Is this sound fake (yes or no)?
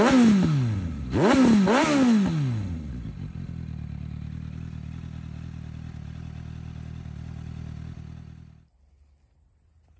no